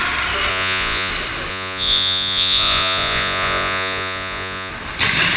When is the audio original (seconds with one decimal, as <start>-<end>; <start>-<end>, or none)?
0.0-0.5; 1.1-1.5; 4.7-5.4